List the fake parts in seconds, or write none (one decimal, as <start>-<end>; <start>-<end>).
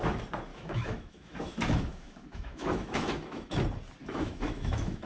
0.5-3.6; 4.0-5.1